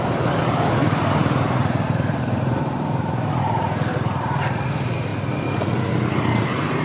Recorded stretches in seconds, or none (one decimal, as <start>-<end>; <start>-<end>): 5.1-6.1